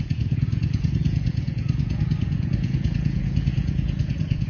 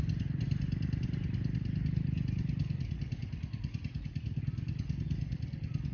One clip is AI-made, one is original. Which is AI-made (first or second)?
first